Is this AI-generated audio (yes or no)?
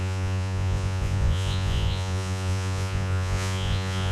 yes